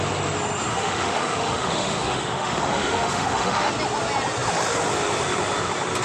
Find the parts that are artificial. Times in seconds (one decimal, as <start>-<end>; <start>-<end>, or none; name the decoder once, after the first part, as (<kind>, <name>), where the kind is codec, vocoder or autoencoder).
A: 0.7-3.7 (autoencoder, DAC-VAE)

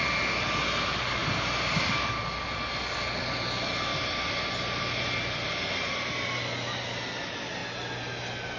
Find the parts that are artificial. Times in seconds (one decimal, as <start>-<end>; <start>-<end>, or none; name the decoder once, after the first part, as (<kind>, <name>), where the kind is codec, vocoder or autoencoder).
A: 1.2-2.1 (vocoder, BigVGAN v2); 3.9-4.8

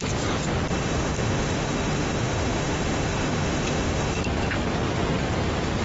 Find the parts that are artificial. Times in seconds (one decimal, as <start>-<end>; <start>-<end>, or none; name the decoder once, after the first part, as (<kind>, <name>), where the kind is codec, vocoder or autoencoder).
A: 0.7-4.2 (autoencoder, DAC-VAE)

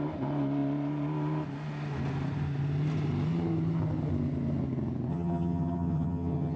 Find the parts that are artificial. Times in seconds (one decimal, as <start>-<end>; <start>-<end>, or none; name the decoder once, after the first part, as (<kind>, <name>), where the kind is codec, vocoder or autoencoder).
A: 5.1-6.6 (vocoder, HiFi-GAN)

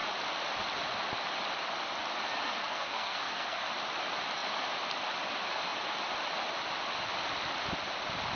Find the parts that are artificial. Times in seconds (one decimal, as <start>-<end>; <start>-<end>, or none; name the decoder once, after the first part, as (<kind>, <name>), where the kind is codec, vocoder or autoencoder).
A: 2.6-3.7 (codec, SNAC)

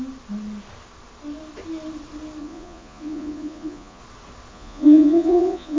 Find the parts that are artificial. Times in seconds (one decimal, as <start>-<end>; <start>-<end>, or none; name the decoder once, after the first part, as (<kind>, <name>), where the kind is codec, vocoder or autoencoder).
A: 2.4-4.0 (vocoder, Vocos); 4.5-5.8

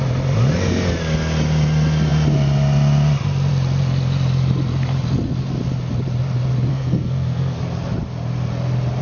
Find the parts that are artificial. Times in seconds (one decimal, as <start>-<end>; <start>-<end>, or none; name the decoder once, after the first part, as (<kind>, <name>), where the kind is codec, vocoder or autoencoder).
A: 6.7-7.6 (codec, SNAC)